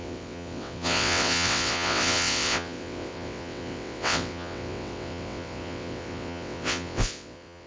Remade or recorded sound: remade